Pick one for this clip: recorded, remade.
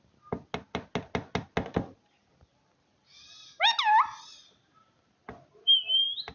recorded